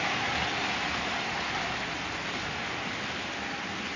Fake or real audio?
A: real